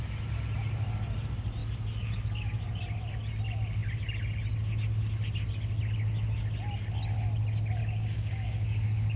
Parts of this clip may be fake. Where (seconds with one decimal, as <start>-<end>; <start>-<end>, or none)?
7.8-9.2